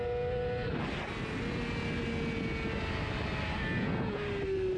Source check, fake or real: real